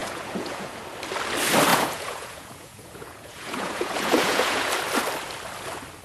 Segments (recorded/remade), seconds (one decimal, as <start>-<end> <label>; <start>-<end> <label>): 0.0-0.8 remade; 0.8-1.7 recorded; 1.7-4.7 remade; 4.7-6.0 recorded